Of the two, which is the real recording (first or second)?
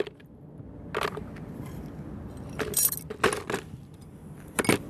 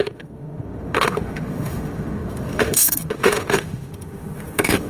first